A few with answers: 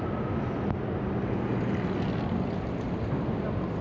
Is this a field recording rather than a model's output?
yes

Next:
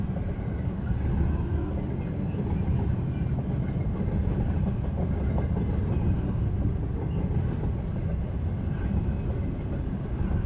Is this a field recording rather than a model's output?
yes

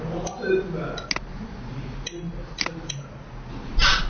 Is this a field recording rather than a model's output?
yes